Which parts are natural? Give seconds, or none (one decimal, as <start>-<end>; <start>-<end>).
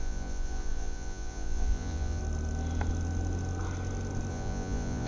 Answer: 2.2-4.3